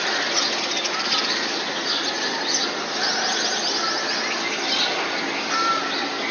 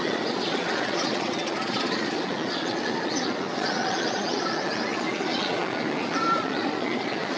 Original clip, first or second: first